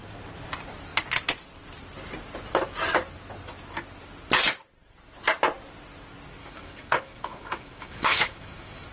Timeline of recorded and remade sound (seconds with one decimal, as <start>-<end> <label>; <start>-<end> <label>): 0.0-6.4 recorded; 6.4-8.9 remade